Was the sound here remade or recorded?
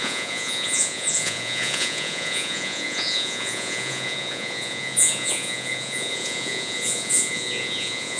remade